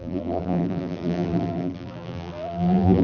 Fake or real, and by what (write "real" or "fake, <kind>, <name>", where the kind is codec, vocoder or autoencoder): fake, vocoder, BigVGAN v2